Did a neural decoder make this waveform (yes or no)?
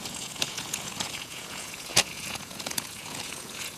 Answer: yes